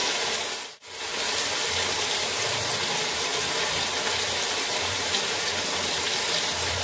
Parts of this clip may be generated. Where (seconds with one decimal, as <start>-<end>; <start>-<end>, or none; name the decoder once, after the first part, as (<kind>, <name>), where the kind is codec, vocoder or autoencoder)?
1.6-3.3 (vocoder, BigVGAN v2); 4.1-6.8